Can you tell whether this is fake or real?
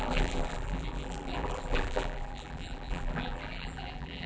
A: fake